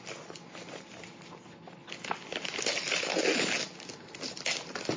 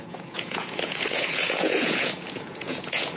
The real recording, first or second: first